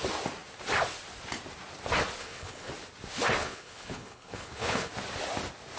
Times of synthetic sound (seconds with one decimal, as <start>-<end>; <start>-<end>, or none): 2.2-2.7; 3.4-4.9